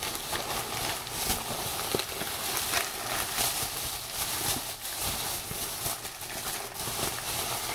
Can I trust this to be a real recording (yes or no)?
yes